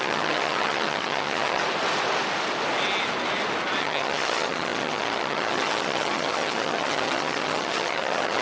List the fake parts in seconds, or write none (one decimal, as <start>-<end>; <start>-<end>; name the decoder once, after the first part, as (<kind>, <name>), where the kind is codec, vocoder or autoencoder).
0.0-1.6 (vocoder, HiFi-GAN); 3.8-8.4